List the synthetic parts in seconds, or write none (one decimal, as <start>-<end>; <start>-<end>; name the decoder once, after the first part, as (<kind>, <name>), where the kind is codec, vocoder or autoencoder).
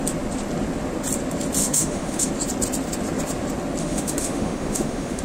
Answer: 1.6-2.3 (autoencoder, DAC-VAE); 3.8-5.2